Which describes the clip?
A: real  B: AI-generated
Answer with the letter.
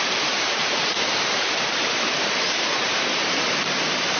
B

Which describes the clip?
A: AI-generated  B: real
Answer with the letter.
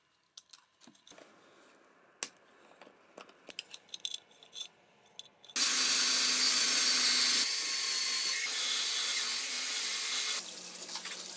B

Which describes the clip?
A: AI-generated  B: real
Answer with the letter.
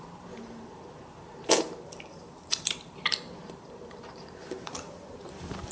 A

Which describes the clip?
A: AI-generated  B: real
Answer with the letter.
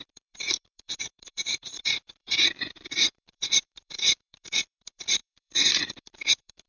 A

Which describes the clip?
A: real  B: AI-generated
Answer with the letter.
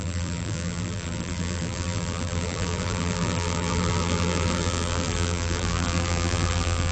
B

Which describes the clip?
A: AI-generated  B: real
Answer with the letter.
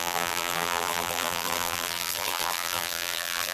A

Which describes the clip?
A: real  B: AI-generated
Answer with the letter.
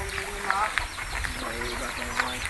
A